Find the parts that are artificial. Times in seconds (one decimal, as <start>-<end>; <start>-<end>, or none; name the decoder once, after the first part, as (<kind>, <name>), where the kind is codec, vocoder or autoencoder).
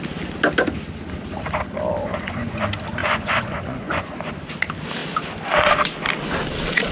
2.0-2.6 (vocoder, Vocos); 3.0-4.3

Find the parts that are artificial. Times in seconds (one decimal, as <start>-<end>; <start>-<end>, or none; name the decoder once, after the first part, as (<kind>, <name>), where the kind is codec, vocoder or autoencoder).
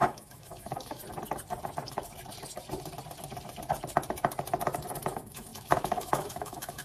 0.0-1.0 (autoencoder, DAC-VAE); 5.1-6.8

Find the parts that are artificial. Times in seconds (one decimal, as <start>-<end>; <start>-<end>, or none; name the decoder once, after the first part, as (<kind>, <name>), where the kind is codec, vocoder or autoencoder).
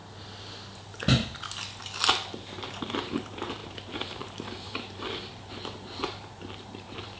2.7-7.2 (vocoder, BigVGAN v2)